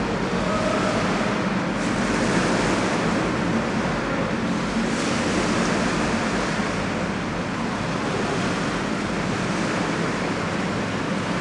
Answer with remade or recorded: recorded